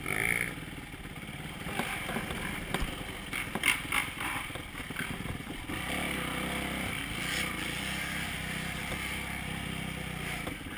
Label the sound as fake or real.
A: fake